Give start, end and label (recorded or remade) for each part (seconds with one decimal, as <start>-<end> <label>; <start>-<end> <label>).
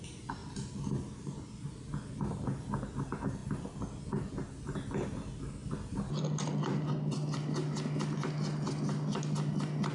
0.0-9.9 recorded